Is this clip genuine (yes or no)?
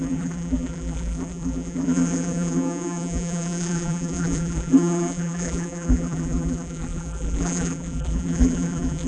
no